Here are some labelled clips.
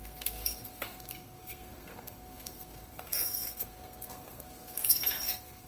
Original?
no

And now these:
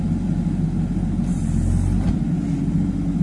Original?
yes